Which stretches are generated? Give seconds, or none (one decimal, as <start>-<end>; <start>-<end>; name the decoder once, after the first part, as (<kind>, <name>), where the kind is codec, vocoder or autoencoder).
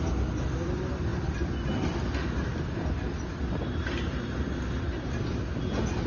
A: none